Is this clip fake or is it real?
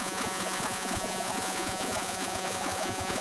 fake